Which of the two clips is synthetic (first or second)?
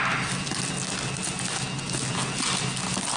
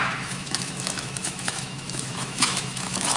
second